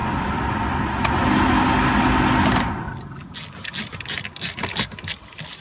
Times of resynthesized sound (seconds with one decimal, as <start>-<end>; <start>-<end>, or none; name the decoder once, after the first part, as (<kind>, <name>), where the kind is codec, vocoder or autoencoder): none